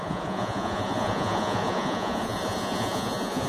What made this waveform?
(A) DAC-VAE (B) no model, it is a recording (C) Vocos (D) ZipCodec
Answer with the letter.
C